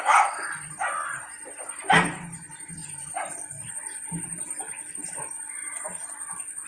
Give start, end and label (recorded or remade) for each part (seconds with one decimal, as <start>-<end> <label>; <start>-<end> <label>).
0.0-2.8 remade; 2.8-3.7 recorded; 3.7-6.7 remade